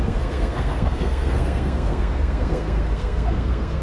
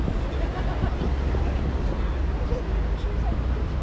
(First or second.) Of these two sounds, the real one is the second